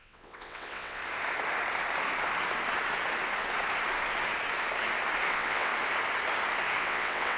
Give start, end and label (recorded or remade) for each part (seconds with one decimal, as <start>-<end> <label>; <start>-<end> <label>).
0.0-1.0 remade; 1.0-5.3 recorded; 5.3-5.7 remade; 5.7-6.8 recorded; 6.8-7.4 remade